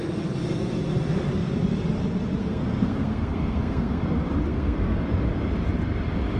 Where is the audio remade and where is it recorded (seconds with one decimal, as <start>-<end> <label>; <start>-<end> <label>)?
0.0-2.4 recorded; 2.4-4.0 remade; 4.0-4.5 recorded; 4.5-5.0 remade; 5.0-6.4 recorded